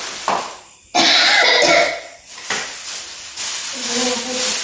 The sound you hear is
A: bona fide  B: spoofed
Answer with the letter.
A